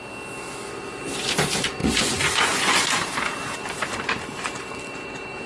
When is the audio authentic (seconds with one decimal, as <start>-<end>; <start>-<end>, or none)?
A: 0.0-1.8; 3.0-5.5